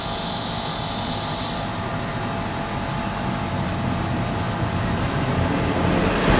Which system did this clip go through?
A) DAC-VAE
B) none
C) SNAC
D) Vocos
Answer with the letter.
B